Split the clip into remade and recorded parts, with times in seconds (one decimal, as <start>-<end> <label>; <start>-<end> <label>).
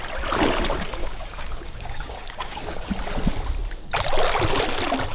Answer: 0.0-1.0 recorded; 1.0-2.9 remade; 2.9-5.1 recorded